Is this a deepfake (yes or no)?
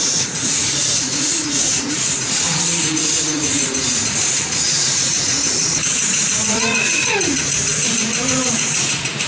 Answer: yes